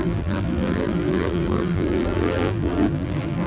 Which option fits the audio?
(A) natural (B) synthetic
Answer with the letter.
B